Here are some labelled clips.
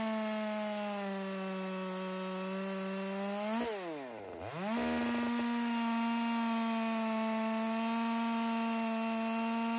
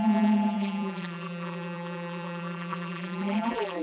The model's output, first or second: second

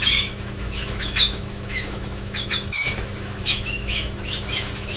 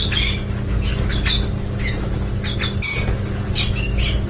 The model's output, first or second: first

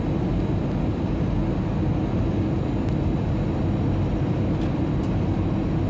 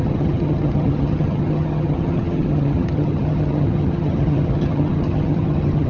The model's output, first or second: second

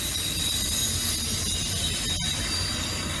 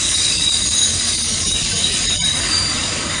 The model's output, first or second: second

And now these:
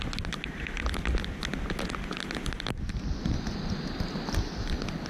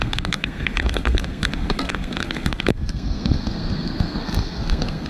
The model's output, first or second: second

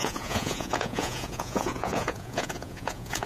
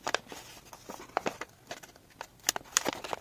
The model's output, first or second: first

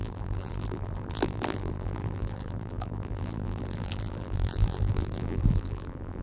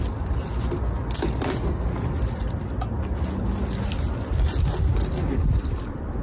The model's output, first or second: first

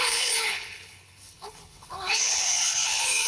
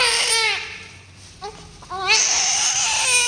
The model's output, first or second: first